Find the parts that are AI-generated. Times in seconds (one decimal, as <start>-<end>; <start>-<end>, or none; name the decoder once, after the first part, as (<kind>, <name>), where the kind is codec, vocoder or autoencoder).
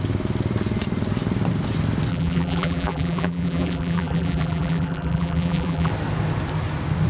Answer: 2.1-5.9 (vocoder, BigVGAN v2)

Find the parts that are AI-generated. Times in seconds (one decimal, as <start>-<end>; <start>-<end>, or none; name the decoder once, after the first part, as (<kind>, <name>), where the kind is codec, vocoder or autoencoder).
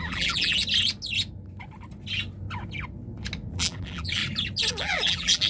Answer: 0.0-0.6 (vocoder, BigVGAN v2); 3.5-4.2; 4.7-5.5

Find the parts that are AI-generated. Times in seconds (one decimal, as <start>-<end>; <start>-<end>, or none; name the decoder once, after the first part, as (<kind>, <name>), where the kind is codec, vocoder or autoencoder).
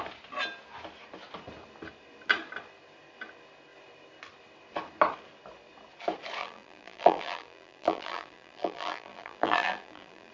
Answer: 6.4-10.3 (vocoder, BigVGAN v2)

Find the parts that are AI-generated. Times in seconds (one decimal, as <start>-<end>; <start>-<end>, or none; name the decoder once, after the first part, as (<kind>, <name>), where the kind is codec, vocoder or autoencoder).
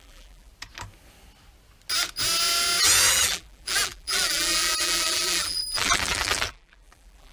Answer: 0.0-0.5 (vocoder, BigVGAN v2); 3.1-7.3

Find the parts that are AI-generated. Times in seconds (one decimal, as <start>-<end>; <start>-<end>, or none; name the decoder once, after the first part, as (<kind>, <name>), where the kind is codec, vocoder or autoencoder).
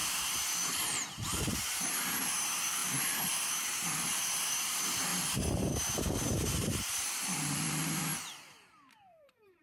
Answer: 0.0-8.1 (vocoder, BigVGAN v2); 8.9-9.6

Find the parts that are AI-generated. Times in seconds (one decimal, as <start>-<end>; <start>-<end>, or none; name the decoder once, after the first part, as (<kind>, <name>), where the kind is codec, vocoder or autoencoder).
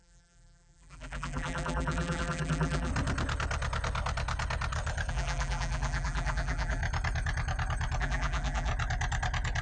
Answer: 0.0-2.9 (vocoder, BigVGAN v2); 5.1-6.8; 8.0-8.7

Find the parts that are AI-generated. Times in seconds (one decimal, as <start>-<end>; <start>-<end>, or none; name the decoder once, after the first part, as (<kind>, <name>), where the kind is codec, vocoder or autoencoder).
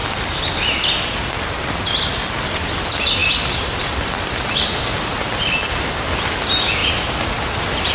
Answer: 0.0-1.2 (vocoder, BigVGAN v2); 3.2-5.8; 6.8-7.9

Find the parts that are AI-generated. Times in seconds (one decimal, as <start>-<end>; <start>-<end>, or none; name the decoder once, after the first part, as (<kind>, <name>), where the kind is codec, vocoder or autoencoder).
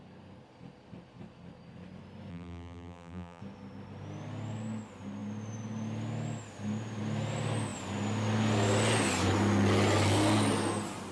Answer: 2.3-3.4 (vocoder, BigVGAN v2)